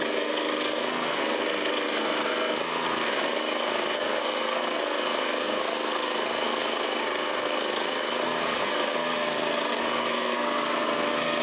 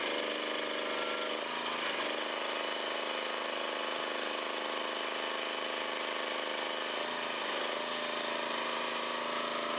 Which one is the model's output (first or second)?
first